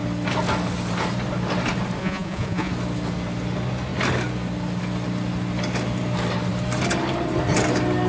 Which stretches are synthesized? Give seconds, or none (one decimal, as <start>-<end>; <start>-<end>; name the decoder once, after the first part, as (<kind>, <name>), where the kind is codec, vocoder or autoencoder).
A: 2.0-2.7 (vocoder, Vocos)